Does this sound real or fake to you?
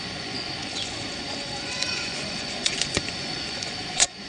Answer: fake